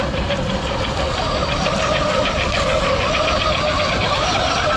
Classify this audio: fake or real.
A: real